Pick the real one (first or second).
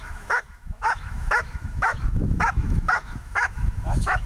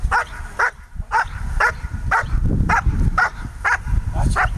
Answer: second